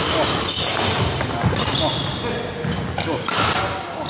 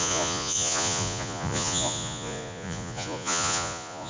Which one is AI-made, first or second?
second